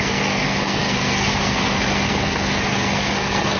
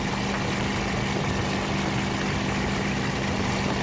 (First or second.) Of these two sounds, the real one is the second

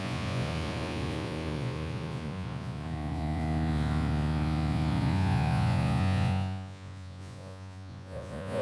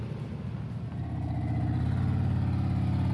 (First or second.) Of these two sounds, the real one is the second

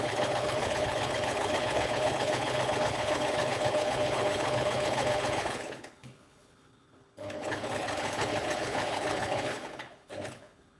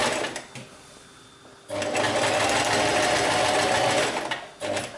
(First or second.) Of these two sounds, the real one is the second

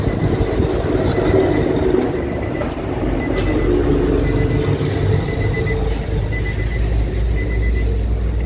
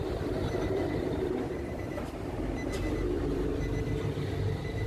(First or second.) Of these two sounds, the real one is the first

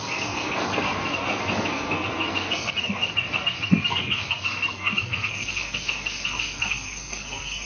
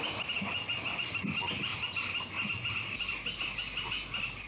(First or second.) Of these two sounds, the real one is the second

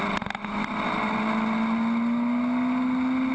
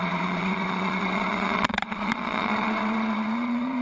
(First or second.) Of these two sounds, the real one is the first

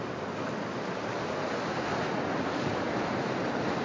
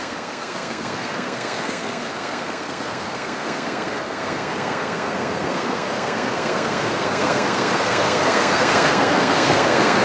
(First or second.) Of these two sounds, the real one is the first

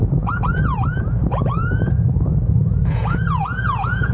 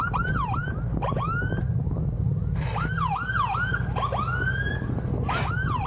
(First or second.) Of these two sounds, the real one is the second